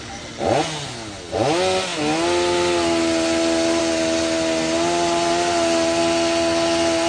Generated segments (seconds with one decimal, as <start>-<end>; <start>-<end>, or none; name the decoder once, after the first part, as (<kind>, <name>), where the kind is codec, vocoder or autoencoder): none